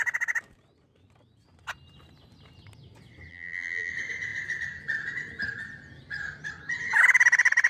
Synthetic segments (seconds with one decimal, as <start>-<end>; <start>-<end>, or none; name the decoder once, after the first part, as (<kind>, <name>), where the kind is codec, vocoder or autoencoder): 3.3-3.9 (vocoder, BigVGAN v2)